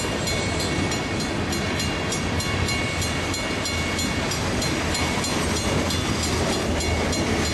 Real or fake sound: real